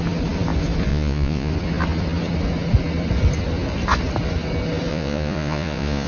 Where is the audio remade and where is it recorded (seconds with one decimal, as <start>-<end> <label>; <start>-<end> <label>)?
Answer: 0.0-0.9 recorded; 0.9-1.5 remade; 1.5-4.9 recorded; 4.9-6.1 remade